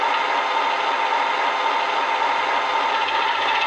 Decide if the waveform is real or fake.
real